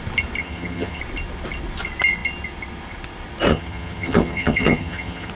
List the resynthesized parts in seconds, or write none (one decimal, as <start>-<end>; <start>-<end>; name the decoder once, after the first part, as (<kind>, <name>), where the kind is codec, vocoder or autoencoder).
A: 0.4-1.0 (vocoder, HiFi-GAN); 3.5-5.3